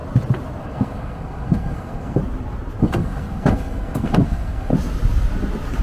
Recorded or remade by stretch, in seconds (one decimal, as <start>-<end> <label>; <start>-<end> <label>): 0.0-0.6 recorded; 0.6-2.2 remade; 2.2-2.8 recorded; 2.8-4.7 remade; 4.7-5.8 recorded